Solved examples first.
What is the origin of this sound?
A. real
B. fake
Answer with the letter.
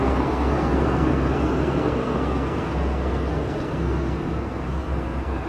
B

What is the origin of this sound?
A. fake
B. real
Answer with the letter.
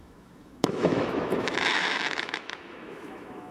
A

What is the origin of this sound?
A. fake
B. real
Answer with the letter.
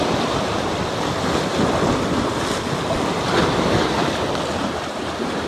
B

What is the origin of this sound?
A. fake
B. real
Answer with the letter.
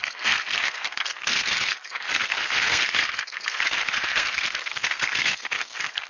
A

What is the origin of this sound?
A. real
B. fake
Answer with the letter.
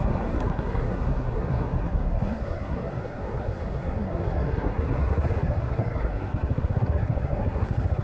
B